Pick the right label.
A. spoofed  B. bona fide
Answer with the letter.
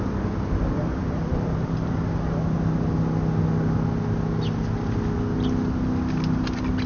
B